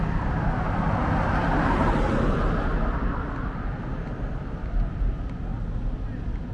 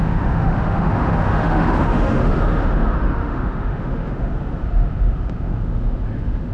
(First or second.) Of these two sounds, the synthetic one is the second